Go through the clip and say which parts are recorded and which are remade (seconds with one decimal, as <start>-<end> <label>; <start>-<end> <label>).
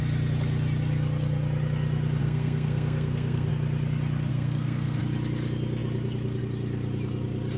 0.0-2.2 recorded; 2.2-3.5 remade; 3.5-4.3 recorded; 4.3-5.0 remade; 5.0-7.6 recorded